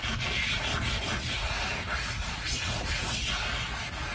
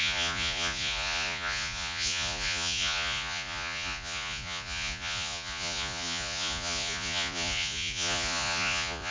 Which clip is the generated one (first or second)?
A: second